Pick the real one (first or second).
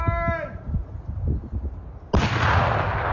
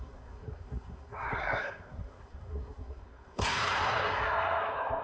first